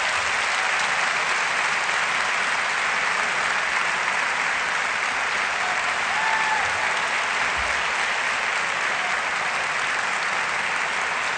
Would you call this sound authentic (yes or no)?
yes